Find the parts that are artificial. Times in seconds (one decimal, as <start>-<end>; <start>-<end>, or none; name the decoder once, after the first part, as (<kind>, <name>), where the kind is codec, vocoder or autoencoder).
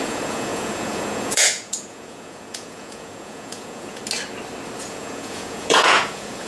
0.0-4.0 (vocoder, Vocos); 4.8-6.5